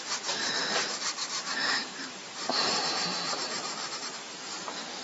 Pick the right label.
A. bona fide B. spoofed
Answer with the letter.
B